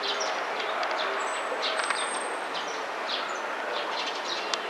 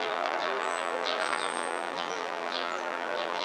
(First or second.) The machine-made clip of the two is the second